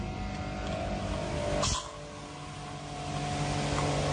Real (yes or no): yes